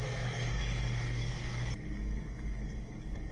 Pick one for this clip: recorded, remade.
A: remade